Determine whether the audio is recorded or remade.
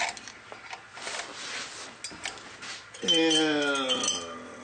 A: recorded